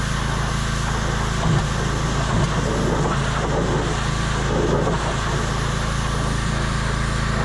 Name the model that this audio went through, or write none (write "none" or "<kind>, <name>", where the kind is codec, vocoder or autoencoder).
none